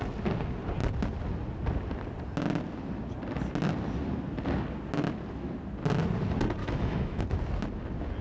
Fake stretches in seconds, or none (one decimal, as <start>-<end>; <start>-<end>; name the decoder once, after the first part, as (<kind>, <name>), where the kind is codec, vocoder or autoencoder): 6.6-7.2 (autoencoder, DAC-VAE)